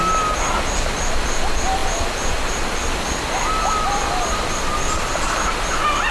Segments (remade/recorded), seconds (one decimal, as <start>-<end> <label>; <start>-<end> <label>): 0.0-6.1 recorded